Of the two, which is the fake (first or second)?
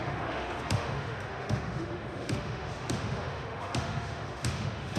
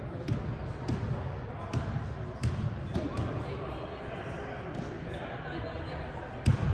first